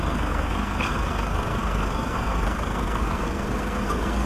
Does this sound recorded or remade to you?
remade